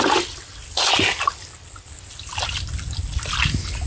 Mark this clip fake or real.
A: real